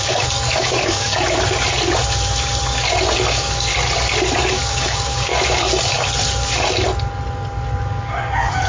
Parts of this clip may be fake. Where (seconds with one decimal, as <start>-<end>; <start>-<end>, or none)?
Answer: 0.0-1.1; 3.3-3.7; 4.5-5.3; 7.8-8.7